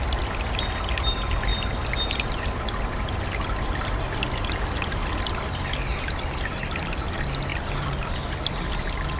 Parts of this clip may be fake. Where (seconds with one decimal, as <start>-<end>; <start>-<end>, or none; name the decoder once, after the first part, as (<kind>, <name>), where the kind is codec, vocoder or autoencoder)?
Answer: 7.5-8.5 (vocoder, BigVGAN v2)

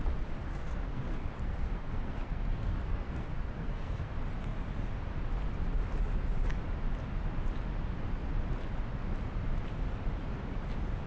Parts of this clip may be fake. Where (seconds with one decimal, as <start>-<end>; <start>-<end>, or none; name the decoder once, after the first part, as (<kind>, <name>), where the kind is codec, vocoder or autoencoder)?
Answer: 0.4-4.1 (codec, SNAC)

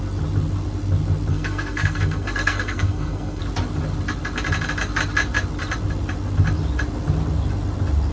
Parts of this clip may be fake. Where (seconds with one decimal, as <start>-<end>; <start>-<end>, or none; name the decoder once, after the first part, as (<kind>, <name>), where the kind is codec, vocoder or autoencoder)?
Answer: 1.3-3.4 (codec, SNAC)

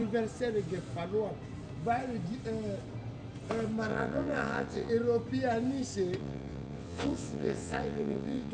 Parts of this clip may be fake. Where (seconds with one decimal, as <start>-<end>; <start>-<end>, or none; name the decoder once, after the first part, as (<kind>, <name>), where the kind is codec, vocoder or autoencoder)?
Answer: 3.9-4.9 (vocoder, WaveNeXt); 6.2-8.5

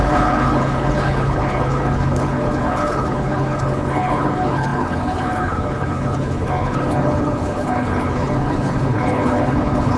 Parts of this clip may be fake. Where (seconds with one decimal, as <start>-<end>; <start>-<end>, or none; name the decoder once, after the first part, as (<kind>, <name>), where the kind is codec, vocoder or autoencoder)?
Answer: 0.0-10.0 (codec, HILCodec)